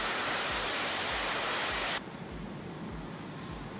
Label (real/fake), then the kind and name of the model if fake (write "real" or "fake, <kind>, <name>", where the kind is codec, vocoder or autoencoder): real